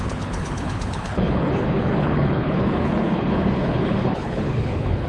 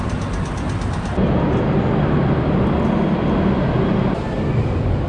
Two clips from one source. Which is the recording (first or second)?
second